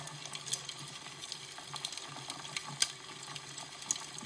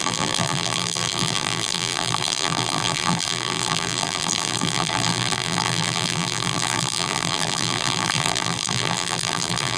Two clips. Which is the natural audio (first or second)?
first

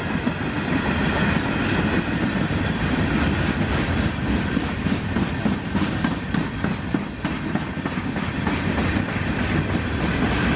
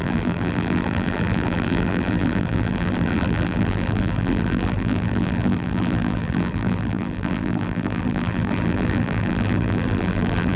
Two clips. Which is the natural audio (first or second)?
first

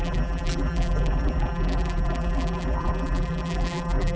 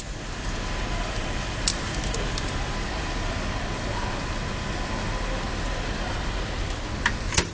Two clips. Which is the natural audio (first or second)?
second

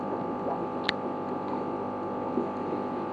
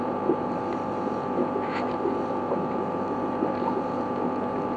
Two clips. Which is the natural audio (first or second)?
first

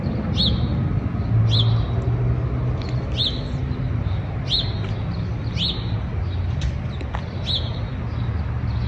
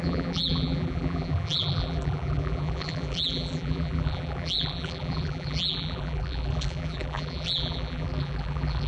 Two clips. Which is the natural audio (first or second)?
first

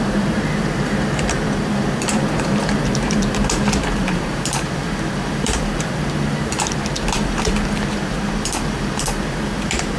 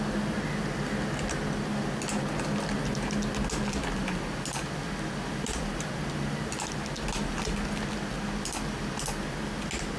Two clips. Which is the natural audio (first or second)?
second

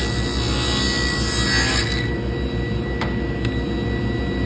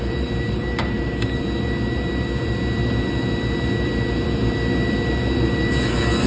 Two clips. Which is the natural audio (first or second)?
first